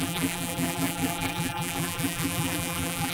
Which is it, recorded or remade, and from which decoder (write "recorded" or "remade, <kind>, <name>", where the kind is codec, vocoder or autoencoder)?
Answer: remade, vocoder, BigVGAN v2